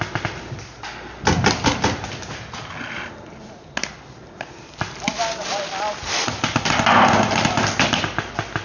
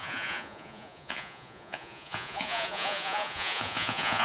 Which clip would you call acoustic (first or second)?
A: first